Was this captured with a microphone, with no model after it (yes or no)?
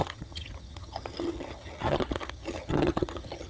no